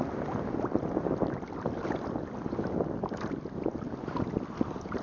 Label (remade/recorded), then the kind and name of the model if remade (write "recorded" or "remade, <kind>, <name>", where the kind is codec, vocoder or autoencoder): recorded